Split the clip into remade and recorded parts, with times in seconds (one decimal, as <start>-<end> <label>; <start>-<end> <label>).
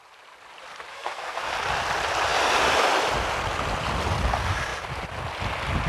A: 0.0-0.9 recorded; 0.9-1.5 remade; 1.5-5.9 recorded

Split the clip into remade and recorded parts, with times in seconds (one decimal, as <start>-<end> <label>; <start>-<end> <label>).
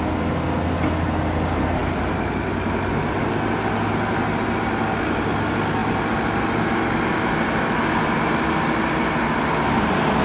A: 0.0-10.2 recorded